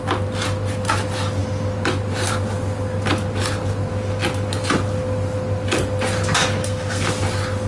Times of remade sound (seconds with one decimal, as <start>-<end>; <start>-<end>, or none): 6.6-7.1